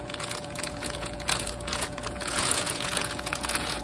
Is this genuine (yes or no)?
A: no